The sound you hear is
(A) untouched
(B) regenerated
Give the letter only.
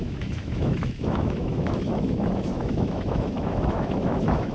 B